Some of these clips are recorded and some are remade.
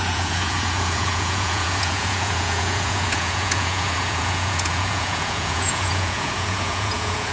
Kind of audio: remade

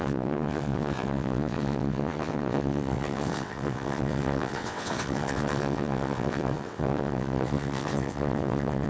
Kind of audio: remade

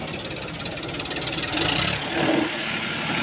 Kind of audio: recorded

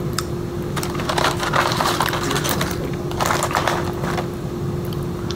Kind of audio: recorded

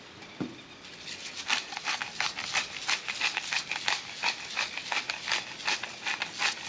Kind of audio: recorded